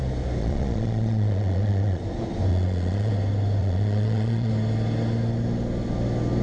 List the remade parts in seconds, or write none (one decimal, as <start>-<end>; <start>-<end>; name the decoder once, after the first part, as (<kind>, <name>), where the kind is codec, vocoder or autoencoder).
0.4-2.0 (vocoder, Vocos); 2.5-3.1; 3.6-4.5